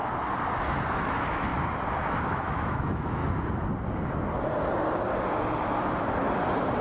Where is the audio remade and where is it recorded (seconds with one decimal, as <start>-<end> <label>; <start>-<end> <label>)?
0.0-0.9 recorded; 0.9-1.5 remade; 1.5-2.2 recorded; 2.2-3.2 remade; 3.2-6.8 recorded

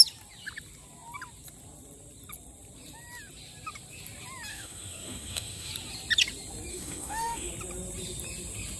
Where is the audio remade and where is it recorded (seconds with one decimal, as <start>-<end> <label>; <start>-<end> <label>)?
0.0-4.5 recorded; 4.5-5.7 remade; 5.7-6.7 recorded; 6.7-7.5 remade; 7.5-8.8 recorded

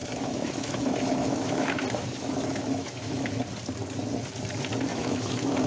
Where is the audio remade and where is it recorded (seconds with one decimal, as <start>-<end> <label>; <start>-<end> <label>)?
0.0-3.4 remade; 3.4-4.9 recorded; 4.9-5.7 remade

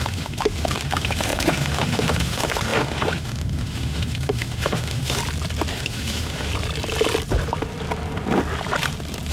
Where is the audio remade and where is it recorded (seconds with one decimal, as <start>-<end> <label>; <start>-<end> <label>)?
0.0-5.2 remade; 5.2-5.7 recorded; 5.7-6.5 remade; 6.5-9.3 recorded

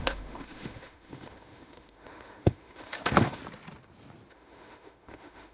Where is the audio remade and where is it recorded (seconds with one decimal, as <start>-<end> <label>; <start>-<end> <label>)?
0.0-3.4 remade; 3.4-4.3 recorded; 4.3-5.5 remade

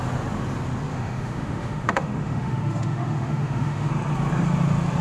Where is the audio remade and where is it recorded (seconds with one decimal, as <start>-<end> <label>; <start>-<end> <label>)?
0.0-0.9 recorded; 0.9-3.9 remade; 3.9-5.0 recorded